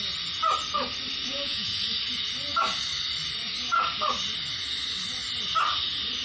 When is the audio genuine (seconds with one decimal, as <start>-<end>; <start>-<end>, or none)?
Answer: 0.0-1.3; 1.8-6.2